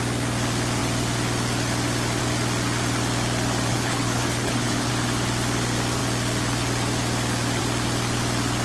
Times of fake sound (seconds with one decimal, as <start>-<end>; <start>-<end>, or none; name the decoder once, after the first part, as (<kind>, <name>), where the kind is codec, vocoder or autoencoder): 3.7-4.9 (codec, HILCodec)